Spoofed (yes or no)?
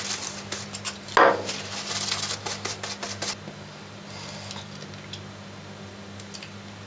no